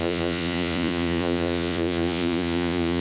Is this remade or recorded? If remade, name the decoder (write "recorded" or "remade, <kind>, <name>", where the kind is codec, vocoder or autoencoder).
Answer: remade, vocoder, Vocos